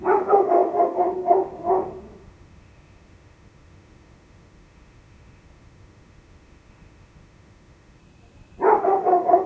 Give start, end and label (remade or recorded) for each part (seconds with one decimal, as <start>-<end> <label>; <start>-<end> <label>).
0.0-8.0 remade; 8.0-8.8 recorded; 8.8-9.5 remade